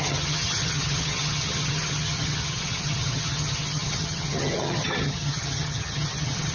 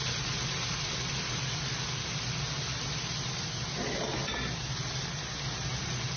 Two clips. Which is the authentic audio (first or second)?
second